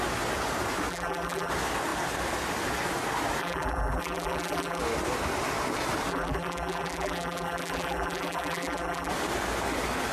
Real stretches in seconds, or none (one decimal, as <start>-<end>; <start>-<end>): 0.0-0.9; 1.5-3.4; 4.8-6.1; 9.1-10.1